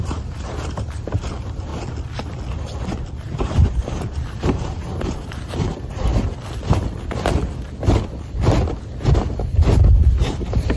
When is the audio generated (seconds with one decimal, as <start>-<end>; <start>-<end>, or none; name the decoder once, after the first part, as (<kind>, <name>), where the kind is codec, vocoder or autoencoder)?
0.0-1.7 (vocoder, BigVGAN v2); 3.1-6.1; 10.2-10.8